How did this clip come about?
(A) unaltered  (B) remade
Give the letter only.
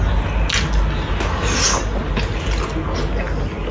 A